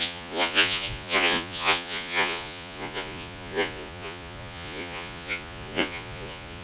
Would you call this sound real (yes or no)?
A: no